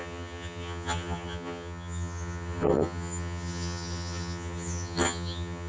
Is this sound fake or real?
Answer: fake